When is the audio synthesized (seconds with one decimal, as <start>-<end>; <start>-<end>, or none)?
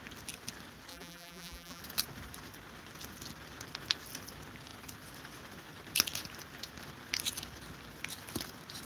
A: 0.9-1.8